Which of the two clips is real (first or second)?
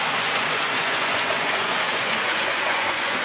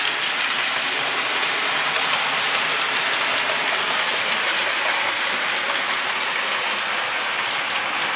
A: second